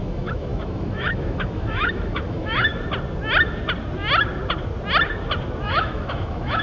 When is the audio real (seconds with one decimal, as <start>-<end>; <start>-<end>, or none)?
2.7-5.6